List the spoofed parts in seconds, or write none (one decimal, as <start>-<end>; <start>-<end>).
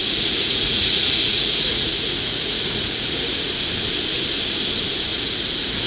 0.0-3.5; 5.1-5.9